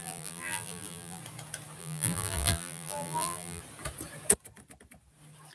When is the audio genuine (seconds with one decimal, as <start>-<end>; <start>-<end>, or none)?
1.2-1.8; 3.6-5.5